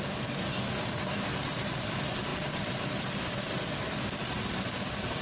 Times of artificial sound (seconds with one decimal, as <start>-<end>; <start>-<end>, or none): none